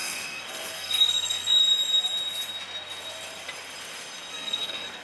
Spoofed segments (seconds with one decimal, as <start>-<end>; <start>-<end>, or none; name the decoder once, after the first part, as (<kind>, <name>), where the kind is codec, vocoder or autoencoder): 0.0-1.6 (codec, SNAC); 4.3-5.0